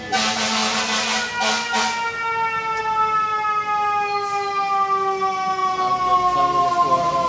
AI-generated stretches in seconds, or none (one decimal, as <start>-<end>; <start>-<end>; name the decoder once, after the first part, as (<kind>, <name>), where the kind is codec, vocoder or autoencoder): none